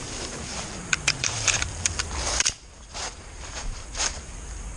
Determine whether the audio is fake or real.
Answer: fake